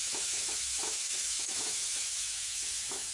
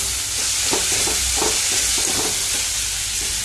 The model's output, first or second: first